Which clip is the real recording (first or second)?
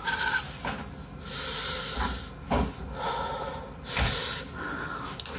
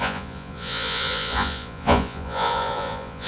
first